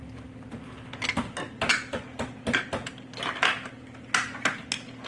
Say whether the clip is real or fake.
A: real